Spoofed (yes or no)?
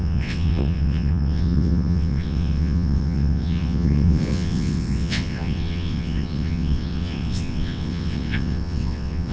yes